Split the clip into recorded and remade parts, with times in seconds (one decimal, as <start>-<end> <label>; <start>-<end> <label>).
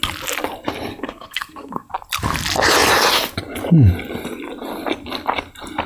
0.0-0.9 recorded; 0.9-1.9 remade; 1.9-5.9 recorded